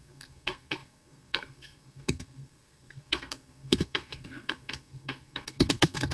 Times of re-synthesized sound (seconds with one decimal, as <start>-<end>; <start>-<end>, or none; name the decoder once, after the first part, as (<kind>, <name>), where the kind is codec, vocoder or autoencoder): 0.0-6.1 (codec, SNAC)